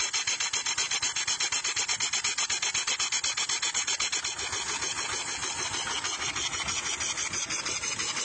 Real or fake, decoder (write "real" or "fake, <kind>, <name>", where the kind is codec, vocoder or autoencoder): real